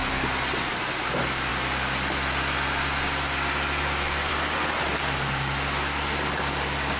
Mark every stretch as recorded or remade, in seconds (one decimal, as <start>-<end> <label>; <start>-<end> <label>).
0.0-7.0 recorded